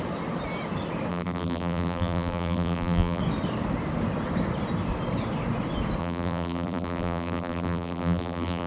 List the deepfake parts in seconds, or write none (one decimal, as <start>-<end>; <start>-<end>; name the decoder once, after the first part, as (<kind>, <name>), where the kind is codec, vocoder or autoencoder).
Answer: 1.1-3.2 (vocoder, BigVGAN v2); 6.0-8.7